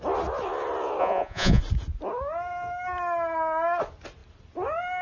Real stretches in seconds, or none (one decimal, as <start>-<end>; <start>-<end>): 0.0-1.0; 1.6-5.0